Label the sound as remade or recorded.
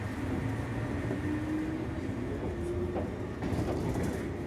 recorded